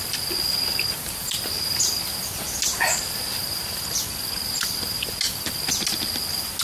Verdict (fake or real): real